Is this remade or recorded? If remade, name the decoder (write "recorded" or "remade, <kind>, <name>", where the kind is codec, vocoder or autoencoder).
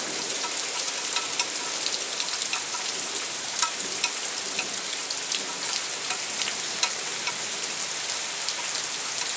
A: recorded